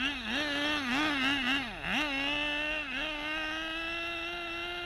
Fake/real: real